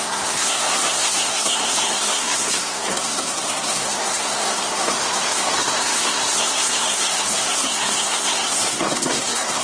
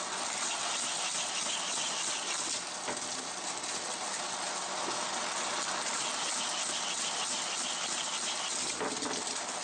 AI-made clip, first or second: first